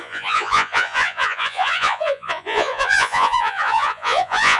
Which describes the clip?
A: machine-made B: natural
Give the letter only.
A